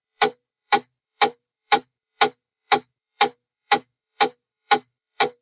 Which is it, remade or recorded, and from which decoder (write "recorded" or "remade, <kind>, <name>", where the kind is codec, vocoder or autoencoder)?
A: remade, vocoder, BigVGAN v2